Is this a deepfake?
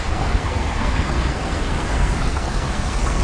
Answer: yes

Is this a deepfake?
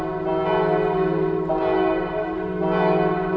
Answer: no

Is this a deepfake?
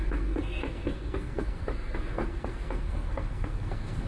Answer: yes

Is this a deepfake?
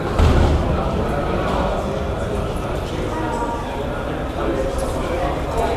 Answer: no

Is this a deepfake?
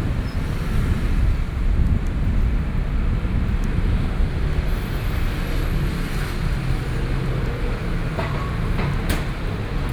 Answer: no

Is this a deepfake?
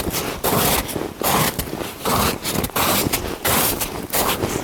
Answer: no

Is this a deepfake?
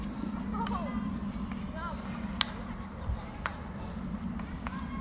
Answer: no